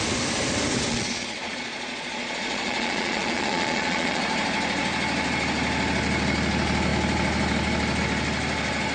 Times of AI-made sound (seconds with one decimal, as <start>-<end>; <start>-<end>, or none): 0.9-4.2

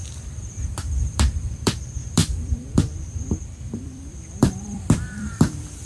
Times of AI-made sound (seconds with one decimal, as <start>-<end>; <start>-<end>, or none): 0.7-5.9

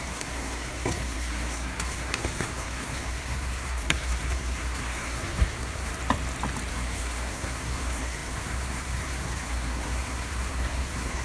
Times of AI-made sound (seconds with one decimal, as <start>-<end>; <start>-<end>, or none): 0.0-5.9; 6.7-11.2

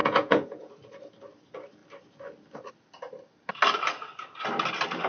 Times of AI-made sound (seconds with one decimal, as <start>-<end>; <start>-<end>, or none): 0.0-0.7